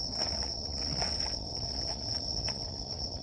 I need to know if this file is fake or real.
fake